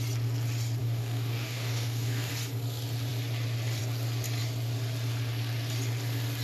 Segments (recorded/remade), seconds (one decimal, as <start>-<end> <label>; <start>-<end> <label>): 0.0-0.8 recorded; 0.8-2.3 remade; 2.3-6.4 recorded